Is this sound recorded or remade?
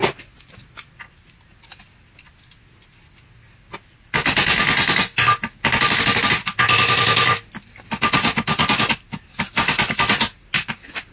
recorded